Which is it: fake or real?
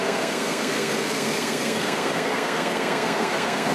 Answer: fake